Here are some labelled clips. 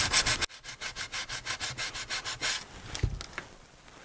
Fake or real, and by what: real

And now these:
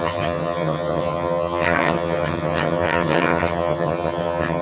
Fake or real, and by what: fake, vocoder, HiFi-GAN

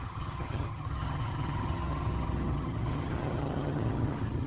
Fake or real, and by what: fake, vocoder, HiFi-GAN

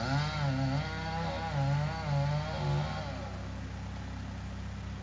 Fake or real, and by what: real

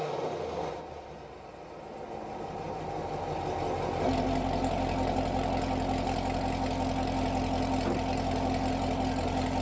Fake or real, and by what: real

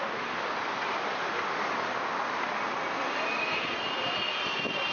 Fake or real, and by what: real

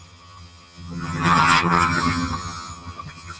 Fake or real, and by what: fake, vocoder, HiFi-GAN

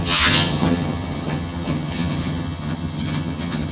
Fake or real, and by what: fake, vocoder, HiFi-GAN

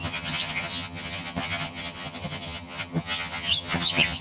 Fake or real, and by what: fake, vocoder, HiFi-GAN